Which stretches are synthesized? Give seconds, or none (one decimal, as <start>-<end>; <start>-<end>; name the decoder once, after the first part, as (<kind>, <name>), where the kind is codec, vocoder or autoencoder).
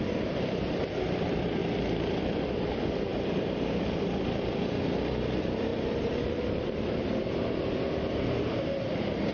0.0-1.6 (vocoder, BigVGAN v2); 2.2-9.3